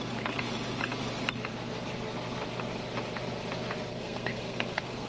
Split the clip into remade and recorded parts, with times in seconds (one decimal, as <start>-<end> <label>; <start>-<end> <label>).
0.0-3.9 recorded; 3.9-5.1 remade